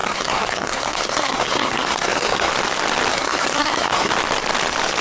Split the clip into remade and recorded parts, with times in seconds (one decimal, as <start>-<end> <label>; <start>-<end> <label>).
0.0-2.5 remade; 2.5-3.1 recorded; 3.1-4.1 remade; 4.1-5.0 recorded